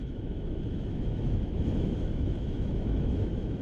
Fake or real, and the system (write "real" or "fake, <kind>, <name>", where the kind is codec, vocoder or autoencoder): fake, autoencoder, DAC-VAE